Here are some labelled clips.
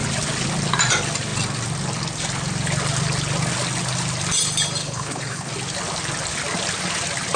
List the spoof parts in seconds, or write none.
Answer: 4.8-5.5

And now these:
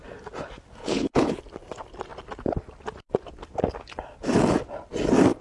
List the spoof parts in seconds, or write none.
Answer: 0.8-1.4

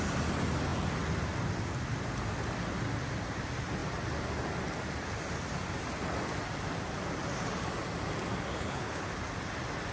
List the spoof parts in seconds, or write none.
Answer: 8.5-9.1